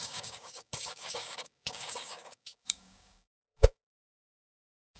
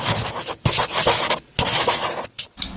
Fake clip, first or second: first